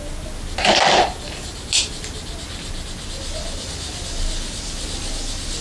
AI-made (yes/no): no